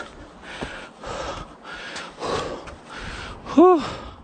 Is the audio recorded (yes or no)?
yes